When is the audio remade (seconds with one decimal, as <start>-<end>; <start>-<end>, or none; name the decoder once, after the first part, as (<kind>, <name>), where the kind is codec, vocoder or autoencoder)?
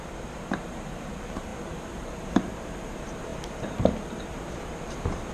0.0-1.5 (vocoder, BigVGAN v2); 2.1-5.3